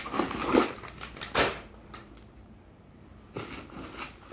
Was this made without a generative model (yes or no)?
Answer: yes